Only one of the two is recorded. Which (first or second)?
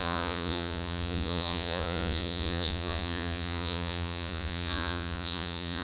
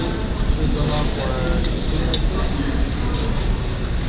second